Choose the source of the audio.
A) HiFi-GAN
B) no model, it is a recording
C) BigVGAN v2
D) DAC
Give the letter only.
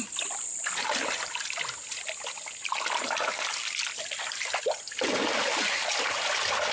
B